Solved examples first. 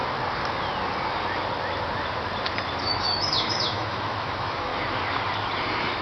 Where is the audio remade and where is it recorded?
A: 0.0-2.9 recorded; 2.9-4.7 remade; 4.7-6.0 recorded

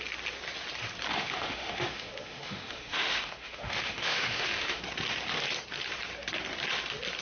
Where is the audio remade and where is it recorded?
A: 0.0-1.1 recorded; 1.1-4.8 remade; 4.8-7.2 recorded

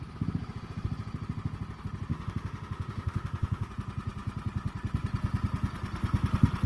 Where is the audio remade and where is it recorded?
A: 0.0-2.1 recorded; 2.1-3.7 remade; 3.7-6.7 recorded

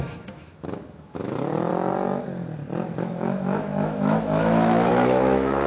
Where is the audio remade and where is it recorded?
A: 0.0-1.7 remade; 1.7-3.0 recorded; 3.0-5.7 remade